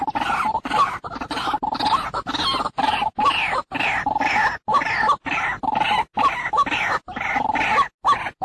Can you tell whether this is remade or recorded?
recorded